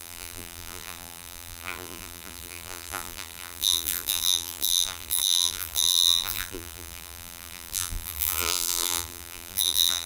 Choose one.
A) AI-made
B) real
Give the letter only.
A